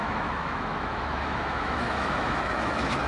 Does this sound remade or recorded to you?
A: remade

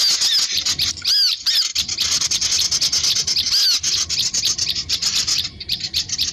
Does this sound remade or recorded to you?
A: recorded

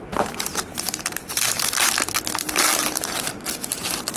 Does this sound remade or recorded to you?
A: remade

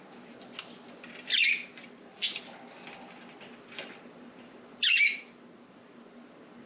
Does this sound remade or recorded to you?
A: recorded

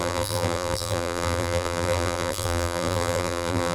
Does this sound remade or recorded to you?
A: remade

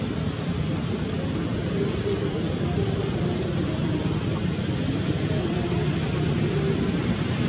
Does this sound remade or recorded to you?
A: remade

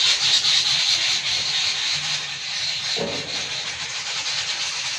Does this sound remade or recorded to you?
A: recorded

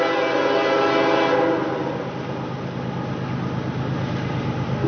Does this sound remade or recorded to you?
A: recorded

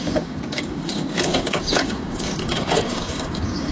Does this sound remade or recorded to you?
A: remade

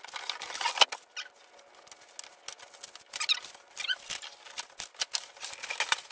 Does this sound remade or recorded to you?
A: recorded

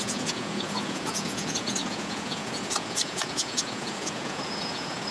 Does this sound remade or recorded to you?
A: remade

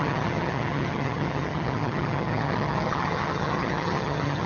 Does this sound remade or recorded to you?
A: remade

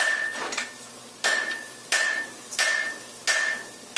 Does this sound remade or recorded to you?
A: recorded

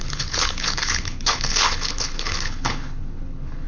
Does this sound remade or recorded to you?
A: remade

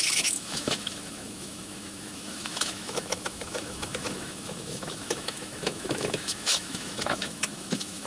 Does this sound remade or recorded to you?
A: remade